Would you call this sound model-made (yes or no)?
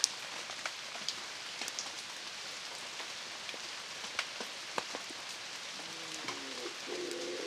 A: no